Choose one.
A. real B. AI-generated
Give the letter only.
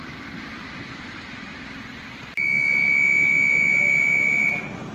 A